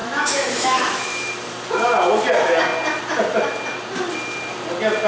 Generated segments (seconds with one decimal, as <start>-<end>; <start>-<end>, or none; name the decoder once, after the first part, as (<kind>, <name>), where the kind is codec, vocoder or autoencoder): 0.0-1.3 (autoencoder, DAC-VAE)